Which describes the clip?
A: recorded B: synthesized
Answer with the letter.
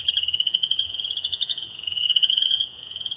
B